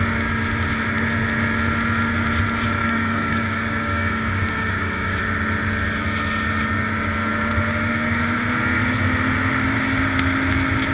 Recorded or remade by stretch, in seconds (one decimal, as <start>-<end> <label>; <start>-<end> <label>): 0.0-2.8 recorded; 2.8-5.2 remade; 5.2-10.9 recorded